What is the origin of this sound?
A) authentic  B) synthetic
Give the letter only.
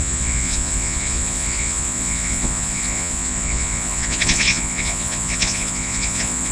B